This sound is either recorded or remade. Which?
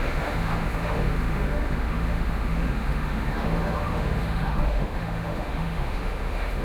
remade